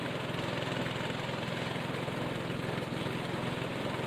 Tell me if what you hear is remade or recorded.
recorded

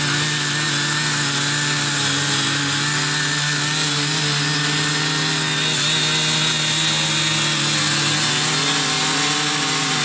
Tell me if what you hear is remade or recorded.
recorded